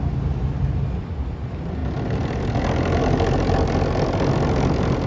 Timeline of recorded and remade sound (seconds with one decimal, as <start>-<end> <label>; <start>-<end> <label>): 0.0-5.1 recorded